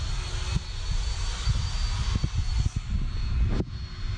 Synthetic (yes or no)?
no